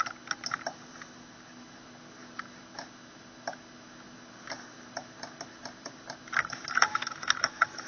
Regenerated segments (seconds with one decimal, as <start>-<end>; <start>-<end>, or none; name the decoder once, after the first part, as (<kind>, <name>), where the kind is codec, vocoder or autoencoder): 6.9-7.9 (autoencoder, DAC-VAE)